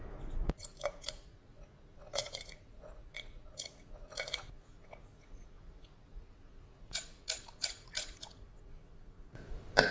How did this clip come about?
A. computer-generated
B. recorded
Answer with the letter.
A